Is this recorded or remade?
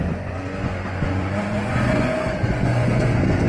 remade